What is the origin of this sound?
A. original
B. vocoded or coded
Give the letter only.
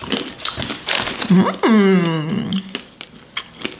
A